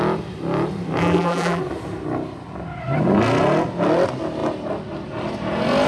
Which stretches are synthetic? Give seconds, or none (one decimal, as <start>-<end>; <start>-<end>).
1.0-1.6